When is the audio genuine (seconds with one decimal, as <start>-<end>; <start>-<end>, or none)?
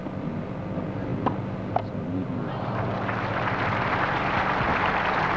0.0-5.4